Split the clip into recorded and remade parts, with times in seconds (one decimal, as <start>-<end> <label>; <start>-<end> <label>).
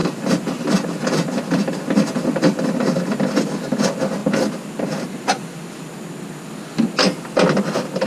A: 0.0-8.1 recorded